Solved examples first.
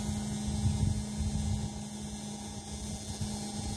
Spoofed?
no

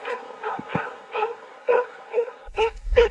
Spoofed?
yes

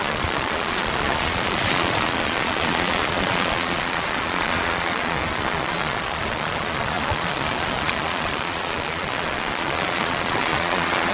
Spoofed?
yes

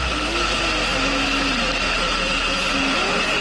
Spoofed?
no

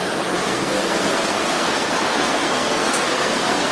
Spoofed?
yes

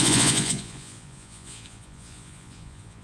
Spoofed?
yes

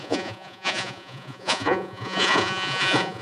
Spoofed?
yes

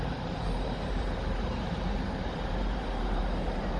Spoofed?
yes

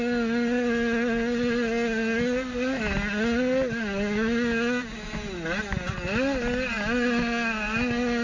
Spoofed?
no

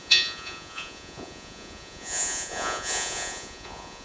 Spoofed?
yes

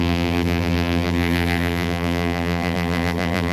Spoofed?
yes